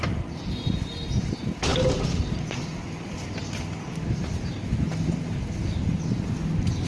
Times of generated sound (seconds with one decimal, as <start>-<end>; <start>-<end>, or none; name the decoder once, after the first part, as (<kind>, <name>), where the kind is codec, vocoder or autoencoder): none